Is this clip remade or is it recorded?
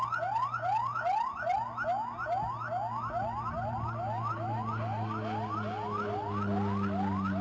recorded